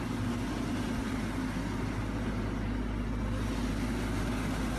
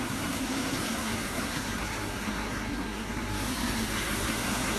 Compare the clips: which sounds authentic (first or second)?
first